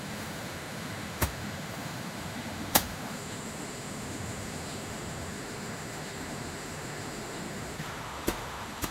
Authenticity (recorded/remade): remade